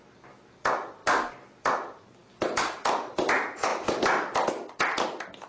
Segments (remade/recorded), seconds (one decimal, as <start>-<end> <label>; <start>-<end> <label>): 0.0-5.5 recorded